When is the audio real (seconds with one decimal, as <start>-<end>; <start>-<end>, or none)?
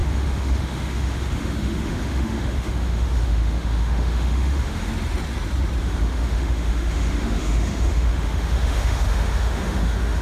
4.9-5.8